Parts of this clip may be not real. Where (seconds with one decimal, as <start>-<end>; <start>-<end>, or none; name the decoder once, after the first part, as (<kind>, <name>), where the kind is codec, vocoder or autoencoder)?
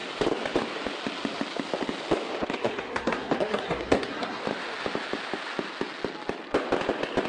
2.6-4.4 (codec, SNAC)